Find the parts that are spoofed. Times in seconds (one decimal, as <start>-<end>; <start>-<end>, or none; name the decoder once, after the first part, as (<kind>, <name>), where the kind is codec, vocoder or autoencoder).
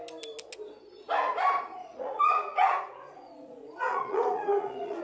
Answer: 1.8-5.0 (vocoder, Vocos)